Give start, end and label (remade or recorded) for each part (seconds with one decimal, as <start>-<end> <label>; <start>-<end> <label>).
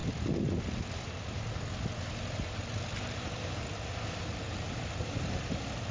0.0-5.9 recorded